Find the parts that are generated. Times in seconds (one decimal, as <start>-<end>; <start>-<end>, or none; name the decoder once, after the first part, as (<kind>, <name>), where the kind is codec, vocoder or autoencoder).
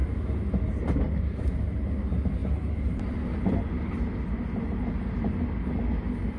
none